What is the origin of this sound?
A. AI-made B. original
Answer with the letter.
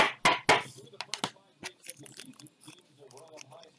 B